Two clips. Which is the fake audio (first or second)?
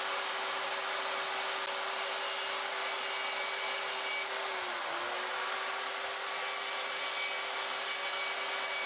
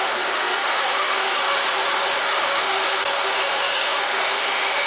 second